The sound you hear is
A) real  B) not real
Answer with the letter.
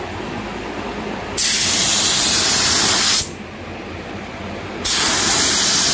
A